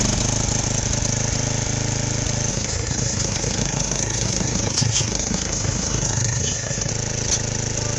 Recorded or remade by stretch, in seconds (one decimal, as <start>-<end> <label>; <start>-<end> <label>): 0.0-2.5 recorded; 2.5-6.9 remade; 6.9-8.0 recorded